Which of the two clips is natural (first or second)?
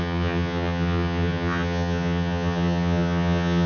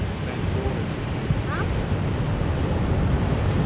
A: second